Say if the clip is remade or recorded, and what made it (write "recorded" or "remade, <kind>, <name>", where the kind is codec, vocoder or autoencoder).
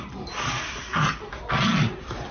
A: recorded